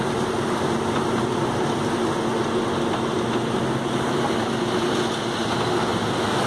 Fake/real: real